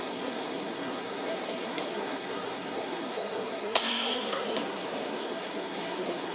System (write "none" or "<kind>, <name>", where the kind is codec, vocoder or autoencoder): codec, SNAC